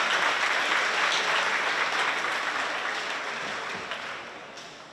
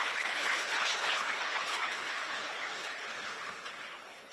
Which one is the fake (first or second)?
second